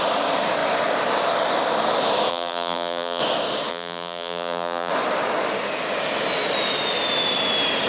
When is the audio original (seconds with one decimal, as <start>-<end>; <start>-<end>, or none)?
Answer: 0.0-2.3; 3.2-3.7; 4.9-7.9